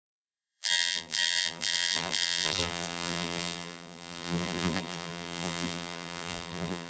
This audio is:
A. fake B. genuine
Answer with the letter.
A